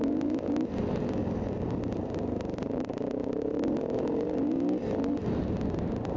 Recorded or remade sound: recorded